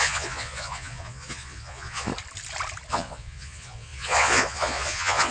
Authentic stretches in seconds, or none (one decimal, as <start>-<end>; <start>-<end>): 2.1-2.9